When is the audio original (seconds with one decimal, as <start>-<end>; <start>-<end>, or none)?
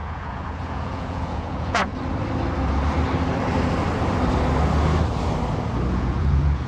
1.9-5.9